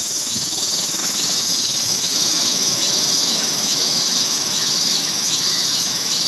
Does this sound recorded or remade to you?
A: remade